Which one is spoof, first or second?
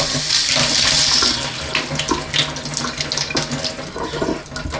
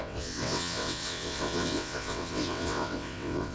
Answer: second